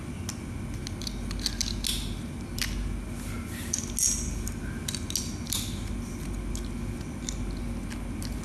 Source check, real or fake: real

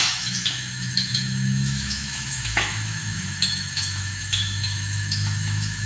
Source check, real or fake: fake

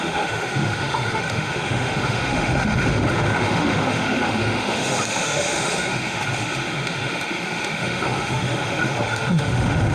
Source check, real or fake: fake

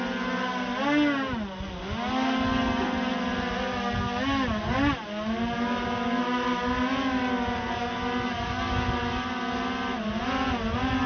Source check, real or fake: real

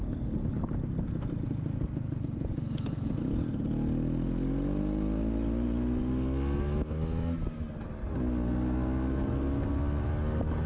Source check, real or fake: real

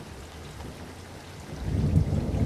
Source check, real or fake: real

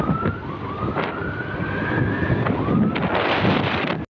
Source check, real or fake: real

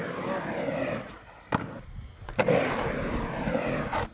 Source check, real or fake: real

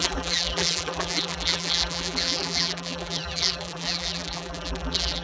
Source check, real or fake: fake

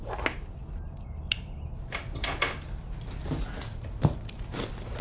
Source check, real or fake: real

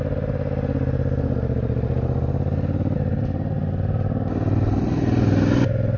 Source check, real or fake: real